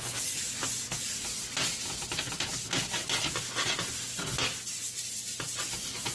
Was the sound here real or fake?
real